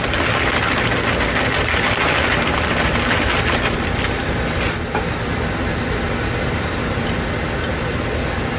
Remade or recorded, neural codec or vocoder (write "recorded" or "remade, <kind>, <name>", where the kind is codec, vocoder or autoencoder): recorded